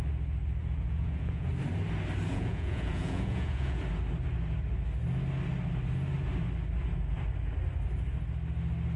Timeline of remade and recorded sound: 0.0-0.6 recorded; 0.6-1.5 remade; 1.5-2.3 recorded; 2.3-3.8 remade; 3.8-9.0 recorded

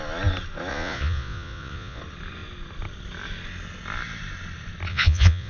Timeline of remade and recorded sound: 0.0-0.7 recorded; 0.7-2.0 remade; 2.0-4.9 recorded; 4.9-5.5 remade